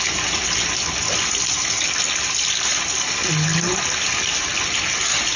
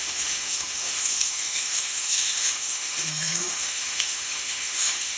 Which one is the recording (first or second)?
first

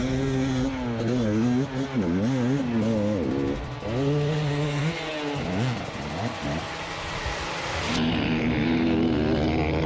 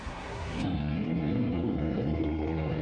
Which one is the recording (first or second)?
first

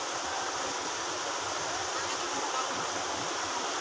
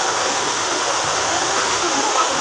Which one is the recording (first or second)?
first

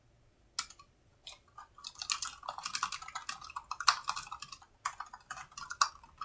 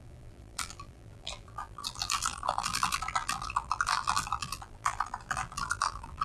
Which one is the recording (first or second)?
first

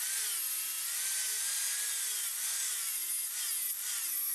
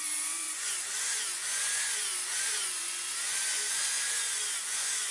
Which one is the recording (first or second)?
first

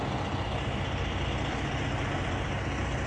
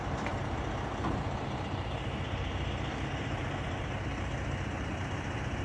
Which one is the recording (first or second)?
first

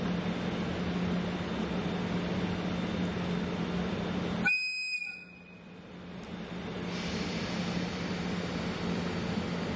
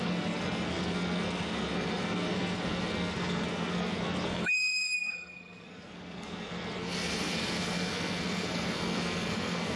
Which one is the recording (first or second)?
first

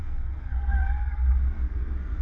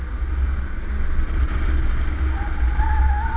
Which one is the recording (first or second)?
second